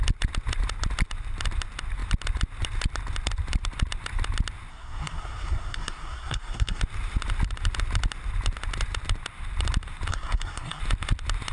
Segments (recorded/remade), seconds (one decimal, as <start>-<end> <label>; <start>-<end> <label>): 0.0-4.7 recorded; 4.7-6.8 remade; 6.8-10.1 recorded; 10.1-10.8 remade; 10.8-11.5 recorded